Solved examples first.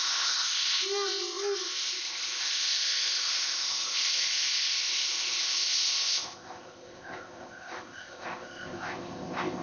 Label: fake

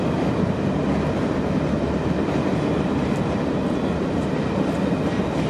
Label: real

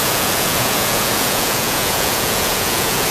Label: fake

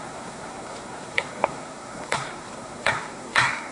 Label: fake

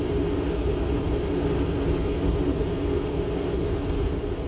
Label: real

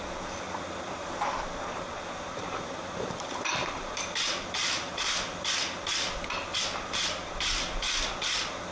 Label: fake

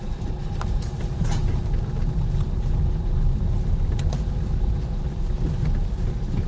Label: real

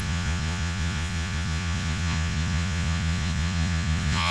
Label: fake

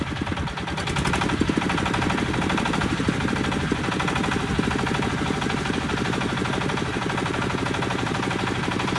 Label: fake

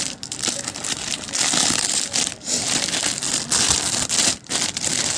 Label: real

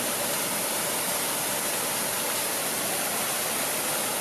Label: real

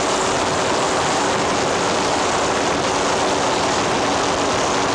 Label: real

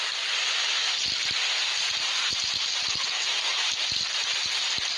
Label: real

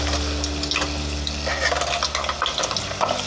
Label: real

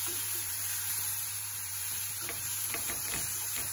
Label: fake